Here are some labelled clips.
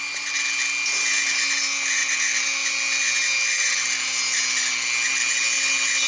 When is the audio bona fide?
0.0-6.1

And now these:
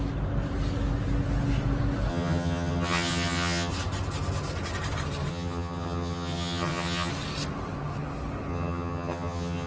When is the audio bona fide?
0.0-2.1; 3.7-5.3; 7.1-8.5

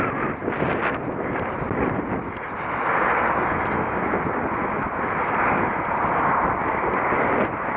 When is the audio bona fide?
0.0-7.8

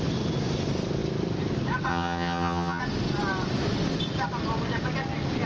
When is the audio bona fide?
0.0-1.9; 2.8-5.5

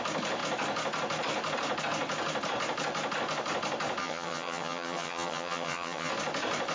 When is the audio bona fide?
0.0-4.0; 6.1-6.7

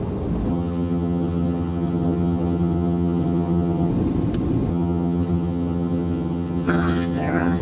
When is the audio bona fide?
0.0-0.5; 3.9-4.7